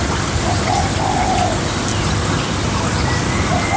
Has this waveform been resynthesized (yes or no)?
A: no